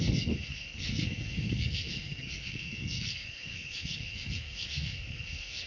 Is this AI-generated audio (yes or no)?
yes